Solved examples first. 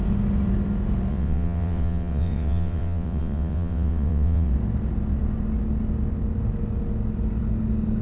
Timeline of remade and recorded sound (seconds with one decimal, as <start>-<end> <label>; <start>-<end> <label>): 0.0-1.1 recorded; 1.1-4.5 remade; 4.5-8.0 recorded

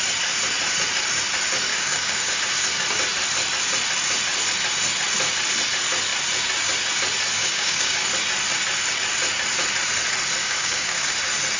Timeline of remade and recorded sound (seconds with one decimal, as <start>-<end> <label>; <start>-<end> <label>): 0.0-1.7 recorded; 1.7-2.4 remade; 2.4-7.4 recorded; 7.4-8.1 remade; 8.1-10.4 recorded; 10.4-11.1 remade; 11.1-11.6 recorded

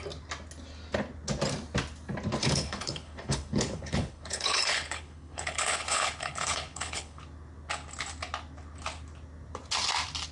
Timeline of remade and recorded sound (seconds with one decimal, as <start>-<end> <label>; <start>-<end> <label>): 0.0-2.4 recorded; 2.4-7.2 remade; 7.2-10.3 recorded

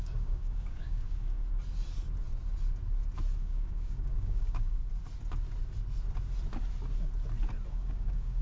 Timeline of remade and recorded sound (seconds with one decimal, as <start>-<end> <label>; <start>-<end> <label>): 0.0-1.4 remade; 1.4-3.4 recorded; 3.4-4.8 remade; 4.8-7.7 recorded; 7.7-8.4 remade